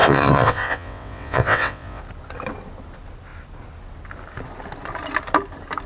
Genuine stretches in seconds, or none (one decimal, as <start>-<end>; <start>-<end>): 2.0-5.9